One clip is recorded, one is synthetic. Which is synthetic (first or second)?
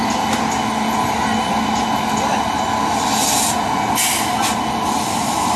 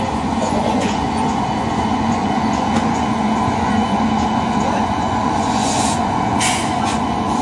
second